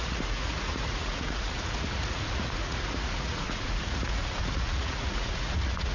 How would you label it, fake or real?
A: fake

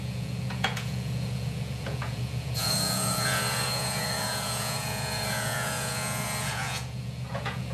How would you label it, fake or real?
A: fake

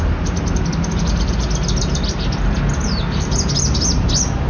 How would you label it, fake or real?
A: real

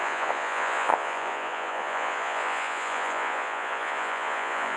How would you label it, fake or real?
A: fake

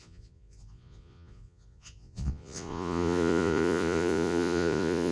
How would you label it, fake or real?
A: fake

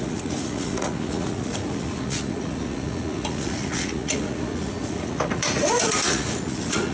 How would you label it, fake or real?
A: fake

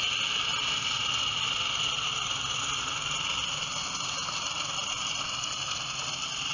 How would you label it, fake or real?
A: real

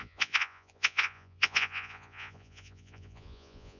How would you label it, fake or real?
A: fake